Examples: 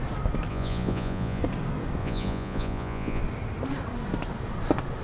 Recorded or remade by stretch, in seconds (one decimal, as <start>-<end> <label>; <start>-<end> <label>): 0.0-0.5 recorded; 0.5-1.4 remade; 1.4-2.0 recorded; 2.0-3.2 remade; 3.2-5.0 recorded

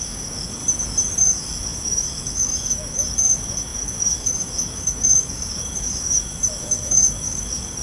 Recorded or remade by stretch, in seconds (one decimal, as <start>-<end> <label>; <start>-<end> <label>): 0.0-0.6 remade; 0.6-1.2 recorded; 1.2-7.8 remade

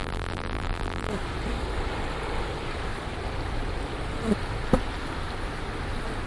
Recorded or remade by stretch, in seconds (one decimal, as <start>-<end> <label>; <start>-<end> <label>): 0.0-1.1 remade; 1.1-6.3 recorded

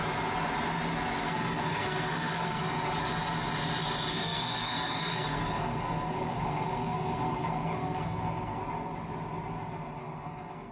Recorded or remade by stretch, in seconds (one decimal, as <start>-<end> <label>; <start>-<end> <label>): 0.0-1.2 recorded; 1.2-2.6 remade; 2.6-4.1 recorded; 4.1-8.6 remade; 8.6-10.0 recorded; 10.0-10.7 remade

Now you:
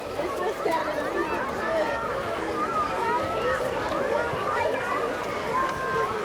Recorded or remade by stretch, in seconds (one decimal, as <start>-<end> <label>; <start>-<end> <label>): 0.0-0.8 remade; 0.8-1.5 recorded; 1.5-6.2 remade